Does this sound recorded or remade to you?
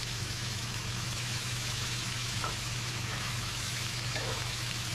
remade